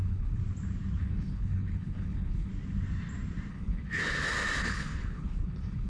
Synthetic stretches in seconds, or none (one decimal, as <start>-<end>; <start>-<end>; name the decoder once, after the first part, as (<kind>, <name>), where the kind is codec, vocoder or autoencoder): 0.0-0.4 (codec, HILCodec); 1.0-2.5; 3.5-4.0; 4.6-5.9